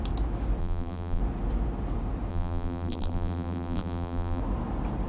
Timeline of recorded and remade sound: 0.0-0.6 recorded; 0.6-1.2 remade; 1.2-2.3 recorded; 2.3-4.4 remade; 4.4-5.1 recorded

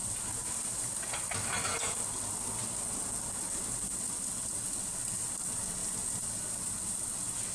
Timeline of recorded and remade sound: 0.0-7.5 recorded

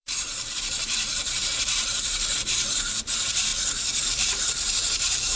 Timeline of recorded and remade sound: 0.0-3.5 remade; 3.5-4.1 recorded; 4.1-5.4 remade

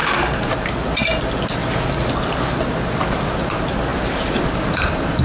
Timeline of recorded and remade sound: 0.0-1.2 remade; 1.2-3.9 recorded; 3.9-4.4 remade; 4.4-5.2 recorded

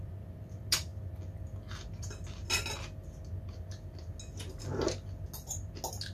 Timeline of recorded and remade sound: 0.0-6.1 recorded